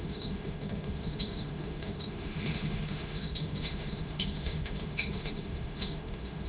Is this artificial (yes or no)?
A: yes